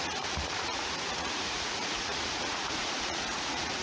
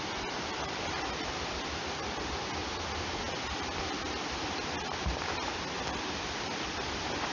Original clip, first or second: second